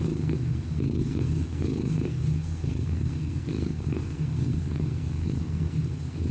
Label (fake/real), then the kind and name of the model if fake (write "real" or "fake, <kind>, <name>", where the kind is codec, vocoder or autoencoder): fake, codec, SNAC